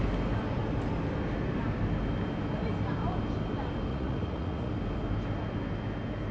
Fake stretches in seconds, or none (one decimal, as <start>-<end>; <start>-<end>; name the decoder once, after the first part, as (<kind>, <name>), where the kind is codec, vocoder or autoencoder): 3.9-4.7 (vocoder, Vocos)